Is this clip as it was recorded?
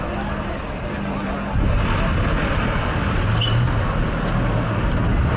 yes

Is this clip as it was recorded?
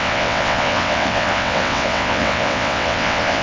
no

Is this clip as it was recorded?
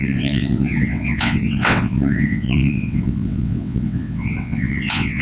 no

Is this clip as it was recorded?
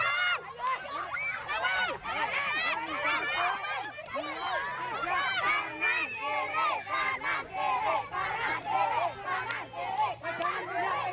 yes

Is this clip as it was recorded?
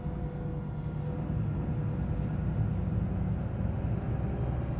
yes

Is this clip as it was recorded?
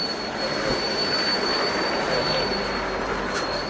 yes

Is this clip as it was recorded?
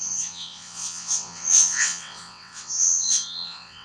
no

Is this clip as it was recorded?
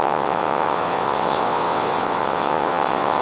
no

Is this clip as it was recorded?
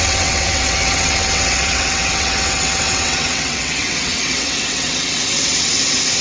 no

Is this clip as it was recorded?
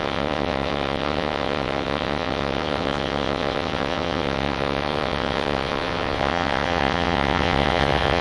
no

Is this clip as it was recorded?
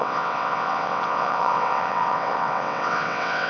no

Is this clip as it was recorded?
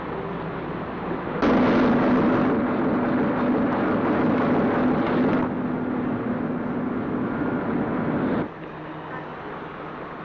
yes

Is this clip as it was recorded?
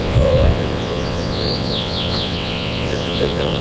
no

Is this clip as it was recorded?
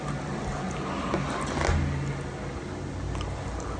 yes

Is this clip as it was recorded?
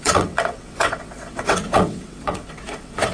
no